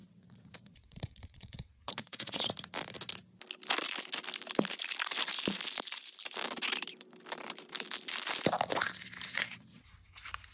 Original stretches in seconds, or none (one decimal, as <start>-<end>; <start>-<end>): 2.5-9.3; 9.9-10.5